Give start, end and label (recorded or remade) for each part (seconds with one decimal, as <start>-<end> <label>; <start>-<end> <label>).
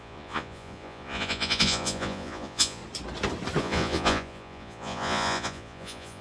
0.0-2.8 remade; 2.8-3.6 recorded; 3.6-6.2 remade